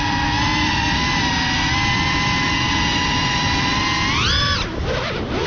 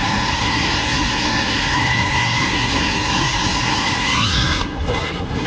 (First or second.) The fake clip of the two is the second